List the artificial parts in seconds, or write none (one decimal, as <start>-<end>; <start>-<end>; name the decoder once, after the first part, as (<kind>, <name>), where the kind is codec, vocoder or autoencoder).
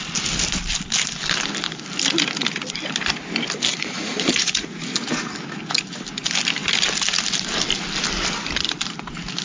3.7-4.8 (vocoder, Vocos)